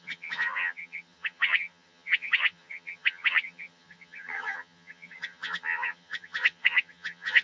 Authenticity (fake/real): fake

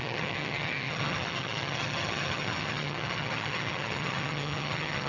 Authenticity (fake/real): fake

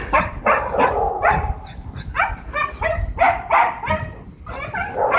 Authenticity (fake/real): real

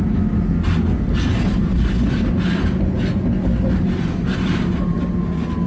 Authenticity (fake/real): real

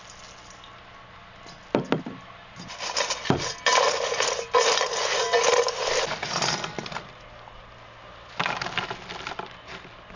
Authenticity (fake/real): real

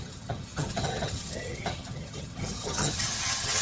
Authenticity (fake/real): fake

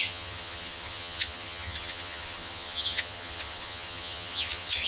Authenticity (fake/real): fake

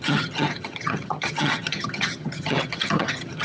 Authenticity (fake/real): fake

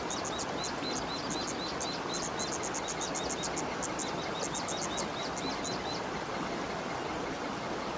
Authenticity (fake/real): real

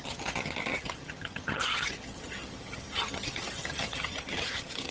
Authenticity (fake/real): fake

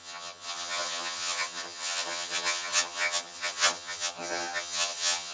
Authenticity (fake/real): fake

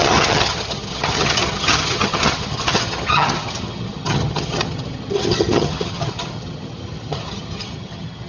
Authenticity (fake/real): fake